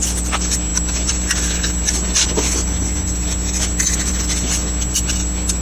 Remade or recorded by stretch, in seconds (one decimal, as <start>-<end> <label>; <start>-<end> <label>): 0.0-5.6 recorded